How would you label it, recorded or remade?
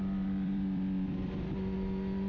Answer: remade